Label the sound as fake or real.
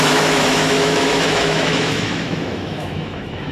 fake